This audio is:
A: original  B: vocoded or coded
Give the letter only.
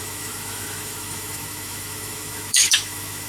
B